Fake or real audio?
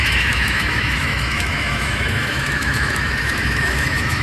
fake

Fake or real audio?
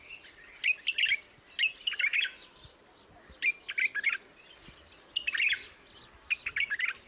real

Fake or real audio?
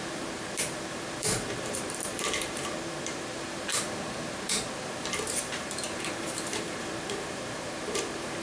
fake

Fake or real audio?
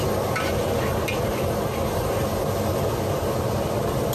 real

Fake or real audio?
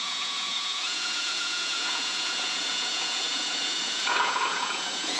fake